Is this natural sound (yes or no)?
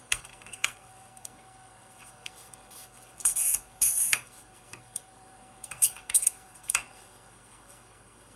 no